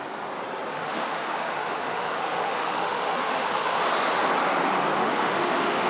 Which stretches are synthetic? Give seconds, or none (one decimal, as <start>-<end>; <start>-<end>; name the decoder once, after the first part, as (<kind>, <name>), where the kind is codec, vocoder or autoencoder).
0.7-3.8 (autoencoder, DAC-VAE); 5.0-5.9